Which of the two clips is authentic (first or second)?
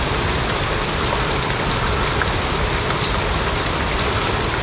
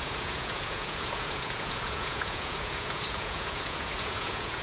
first